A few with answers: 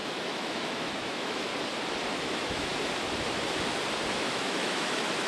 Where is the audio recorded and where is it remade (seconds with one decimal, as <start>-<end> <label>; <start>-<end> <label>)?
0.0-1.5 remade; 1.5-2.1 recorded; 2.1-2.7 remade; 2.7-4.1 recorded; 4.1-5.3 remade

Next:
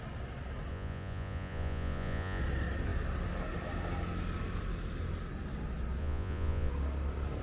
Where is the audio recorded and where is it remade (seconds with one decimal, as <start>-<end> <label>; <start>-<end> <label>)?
0.0-0.7 recorded; 0.7-2.4 remade; 2.4-6.0 recorded; 6.0-6.7 remade; 6.7-7.4 recorded

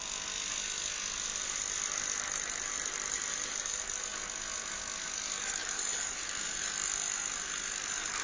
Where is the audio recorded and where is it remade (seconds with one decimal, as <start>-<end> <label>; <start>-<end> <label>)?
0.0-5.6 recorded; 5.6-6.6 remade; 6.6-8.2 recorded

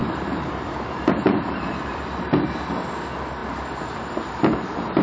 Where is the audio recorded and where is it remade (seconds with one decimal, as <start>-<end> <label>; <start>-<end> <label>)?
0.0-2.7 remade; 2.7-3.4 recorded; 3.4-4.5 remade; 4.5-5.0 recorded

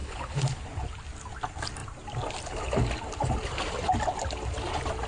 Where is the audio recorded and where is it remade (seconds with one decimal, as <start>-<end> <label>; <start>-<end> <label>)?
0.0-0.6 remade; 0.6-5.1 recorded

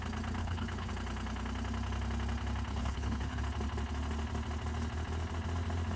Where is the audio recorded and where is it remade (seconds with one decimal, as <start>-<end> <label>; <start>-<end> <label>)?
0.0-0.4 recorded; 0.4-0.9 remade; 0.9-2.7 recorded; 2.7-3.4 remade; 3.4-6.0 recorded